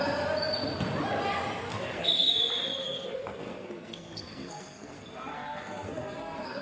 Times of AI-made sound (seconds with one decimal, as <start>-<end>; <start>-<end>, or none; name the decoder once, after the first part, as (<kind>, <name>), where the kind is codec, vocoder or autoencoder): 1.7-2.3 (codec, SNAC); 2.8-6.6